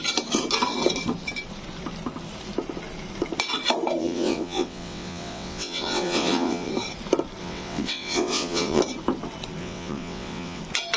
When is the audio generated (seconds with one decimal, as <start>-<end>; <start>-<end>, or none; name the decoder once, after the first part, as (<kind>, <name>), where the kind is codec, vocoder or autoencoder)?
4.0-6.7 (vocoder, WaveNeXt); 7.4-8.8; 9.6-10.6